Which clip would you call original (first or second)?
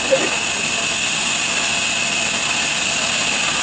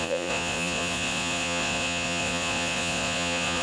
first